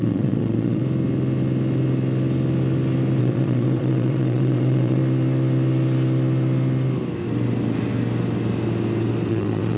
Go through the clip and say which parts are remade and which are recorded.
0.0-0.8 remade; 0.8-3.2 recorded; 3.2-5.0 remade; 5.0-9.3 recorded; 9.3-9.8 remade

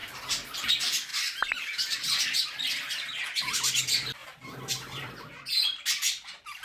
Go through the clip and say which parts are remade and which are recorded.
0.0-1.1 remade; 1.1-3.8 recorded; 3.8-4.2 remade; 4.2-4.7 recorded; 4.7-6.6 remade

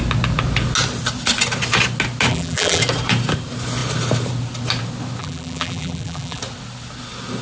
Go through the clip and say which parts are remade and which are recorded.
0.0-2.3 recorded; 2.3-2.8 remade; 2.8-5.2 recorded; 5.2-6.4 remade; 6.4-7.4 recorded

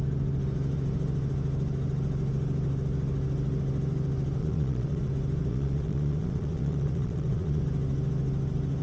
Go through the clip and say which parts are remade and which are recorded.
0.0-4.4 recorded; 4.4-5.1 remade; 5.1-5.5 recorded; 5.5-7.6 remade; 7.6-8.8 recorded

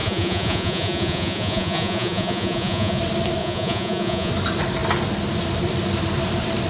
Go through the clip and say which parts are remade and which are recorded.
0.0-3.0 remade; 3.0-3.4 recorded; 3.4-4.3 remade; 4.3-6.7 recorded

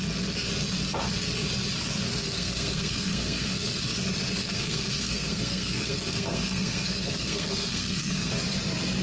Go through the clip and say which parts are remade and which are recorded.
0.0-2.2 recorded; 2.2-3.8 remade; 3.8-4.4 recorded; 4.4-8.3 remade; 8.3-9.0 recorded

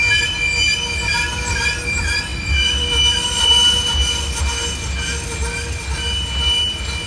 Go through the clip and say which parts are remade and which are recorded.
0.0-7.1 recorded